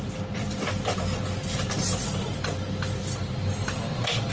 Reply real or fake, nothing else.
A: real